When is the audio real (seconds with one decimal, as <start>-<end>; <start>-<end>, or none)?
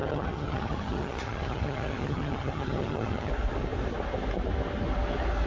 3.3-5.5